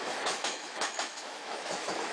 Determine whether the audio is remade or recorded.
remade